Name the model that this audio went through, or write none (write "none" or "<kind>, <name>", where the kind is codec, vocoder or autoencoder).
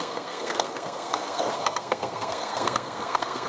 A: codec, SNAC